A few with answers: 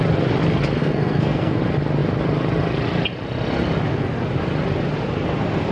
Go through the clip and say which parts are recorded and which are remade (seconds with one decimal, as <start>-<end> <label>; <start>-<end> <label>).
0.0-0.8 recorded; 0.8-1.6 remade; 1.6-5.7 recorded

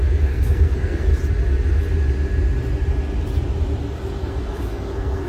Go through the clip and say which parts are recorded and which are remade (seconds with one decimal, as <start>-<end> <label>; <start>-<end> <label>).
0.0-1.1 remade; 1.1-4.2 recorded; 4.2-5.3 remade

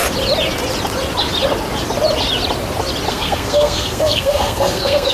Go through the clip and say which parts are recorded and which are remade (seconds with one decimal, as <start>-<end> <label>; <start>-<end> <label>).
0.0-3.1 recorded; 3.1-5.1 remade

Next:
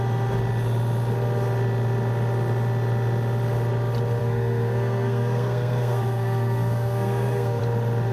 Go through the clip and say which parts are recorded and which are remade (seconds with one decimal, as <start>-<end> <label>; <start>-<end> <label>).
0.0-4.2 recorded; 4.2-7.6 remade; 7.6-8.1 recorded

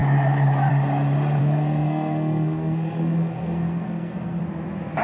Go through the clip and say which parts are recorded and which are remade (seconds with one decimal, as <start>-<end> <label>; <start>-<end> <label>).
0.0-1.4 recorded; 1.4-4.4 remade; 4.4-5.0 recorded